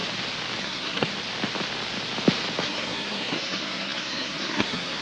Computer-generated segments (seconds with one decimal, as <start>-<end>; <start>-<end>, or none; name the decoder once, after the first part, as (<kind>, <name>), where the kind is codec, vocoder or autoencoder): 0.6-1.1 (codec, SNAC); 2.6-5.0